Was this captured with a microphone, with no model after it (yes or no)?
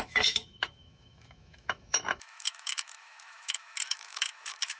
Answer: no